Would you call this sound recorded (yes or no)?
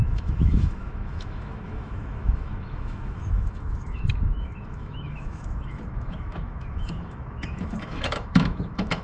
no